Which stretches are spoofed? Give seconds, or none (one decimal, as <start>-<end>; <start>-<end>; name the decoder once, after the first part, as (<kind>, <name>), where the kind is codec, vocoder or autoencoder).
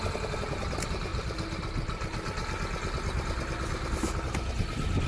none